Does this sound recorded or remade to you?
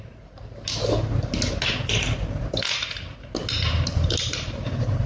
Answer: recorded